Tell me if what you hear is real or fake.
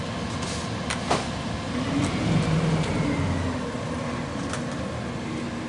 real